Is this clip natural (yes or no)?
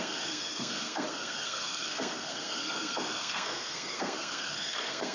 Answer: no